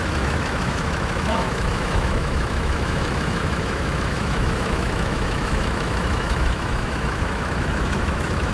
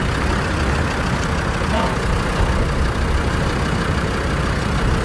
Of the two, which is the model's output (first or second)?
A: first